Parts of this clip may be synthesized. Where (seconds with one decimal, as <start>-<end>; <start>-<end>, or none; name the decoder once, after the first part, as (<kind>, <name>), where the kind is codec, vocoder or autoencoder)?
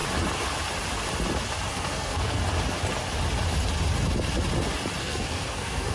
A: 1.7-2.4 (codec, SNAC); 5.0-5.9